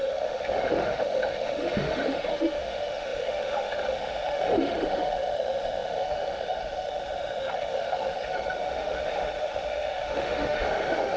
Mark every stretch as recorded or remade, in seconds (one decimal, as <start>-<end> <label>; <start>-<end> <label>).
0.0-11.2 remade